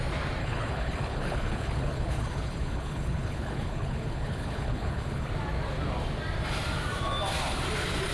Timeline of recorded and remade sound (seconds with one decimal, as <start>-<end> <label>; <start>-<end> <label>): 0.0-0.4 recorded; 0.4-5.3 remade; 5.3-8.1 recorded